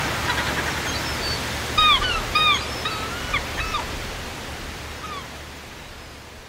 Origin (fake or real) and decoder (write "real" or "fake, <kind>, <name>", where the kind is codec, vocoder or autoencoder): real